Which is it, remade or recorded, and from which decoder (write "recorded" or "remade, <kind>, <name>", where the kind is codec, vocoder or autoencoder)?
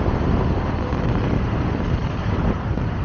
recorded